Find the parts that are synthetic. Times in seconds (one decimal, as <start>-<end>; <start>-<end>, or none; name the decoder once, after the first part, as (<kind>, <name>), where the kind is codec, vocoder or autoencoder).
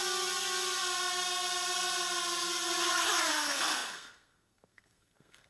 3.3-5.5 (codec, SNAC)